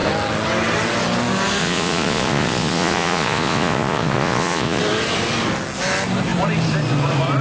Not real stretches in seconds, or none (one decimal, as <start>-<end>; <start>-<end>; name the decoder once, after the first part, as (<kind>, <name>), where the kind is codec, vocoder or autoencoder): 1.6-4.8 (vocoder, Vocos)